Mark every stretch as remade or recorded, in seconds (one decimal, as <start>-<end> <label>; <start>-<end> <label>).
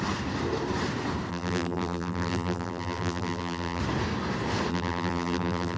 0.0-1.3 recorded; 1.3-3.8 remade; 3.8-4.7 recorded; 4.7-5.8 remade